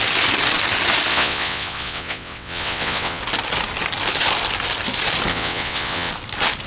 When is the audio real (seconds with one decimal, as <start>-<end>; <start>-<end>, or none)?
0.0-1.1; 3.2-5.3; 6.1-6.7